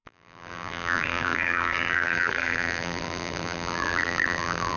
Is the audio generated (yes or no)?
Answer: yes